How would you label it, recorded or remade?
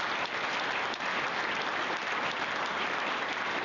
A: recorded